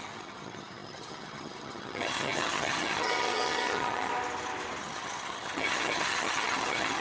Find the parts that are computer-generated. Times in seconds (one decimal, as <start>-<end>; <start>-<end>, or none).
0.0-4.1; 4.8-7.0